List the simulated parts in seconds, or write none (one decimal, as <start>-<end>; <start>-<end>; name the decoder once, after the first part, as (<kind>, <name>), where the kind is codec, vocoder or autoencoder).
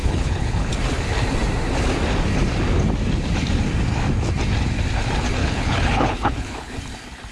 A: 0.0-0.7 (codec, HILCodec); 5.4-6.7